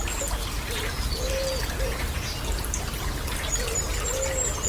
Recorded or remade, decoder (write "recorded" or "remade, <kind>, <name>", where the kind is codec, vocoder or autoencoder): recorded